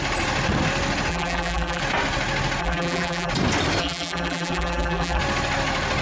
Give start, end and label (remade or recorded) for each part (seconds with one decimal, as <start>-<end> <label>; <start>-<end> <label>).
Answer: 0.0-1.1 recorded; 1.1-1.8 remade; 1.8-2.6 recorded; 2.6-3.3 remade; 3.3-3.8 recorded; 3.8-5.2 remade; 5.2-6.0 recorded